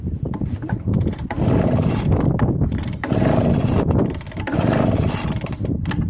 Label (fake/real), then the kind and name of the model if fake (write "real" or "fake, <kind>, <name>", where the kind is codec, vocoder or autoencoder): fake, vocoder, BigVGAN v2